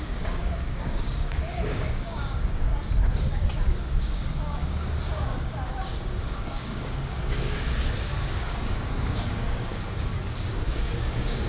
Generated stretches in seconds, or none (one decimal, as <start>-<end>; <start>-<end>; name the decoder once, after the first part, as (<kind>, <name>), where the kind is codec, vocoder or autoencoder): 0.0-2.7 (codec, DAC); 3.3-11.5